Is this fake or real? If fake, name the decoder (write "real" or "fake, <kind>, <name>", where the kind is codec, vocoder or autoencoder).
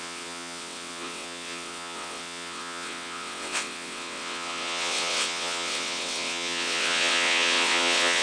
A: fake, vocoder, WaveNeXt